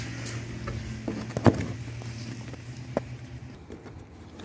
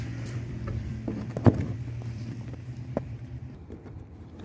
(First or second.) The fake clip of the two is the second